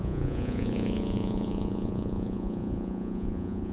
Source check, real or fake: fake